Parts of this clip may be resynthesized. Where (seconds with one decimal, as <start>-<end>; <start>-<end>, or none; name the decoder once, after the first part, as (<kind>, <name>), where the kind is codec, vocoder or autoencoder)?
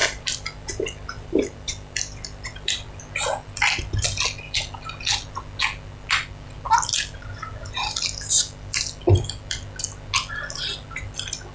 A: 0.0-3.0 (vocoder, BigVGAN v2)